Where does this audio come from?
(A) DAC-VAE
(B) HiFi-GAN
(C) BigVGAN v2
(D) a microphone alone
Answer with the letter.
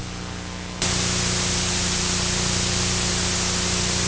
D